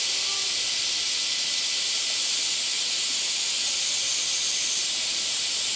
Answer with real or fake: real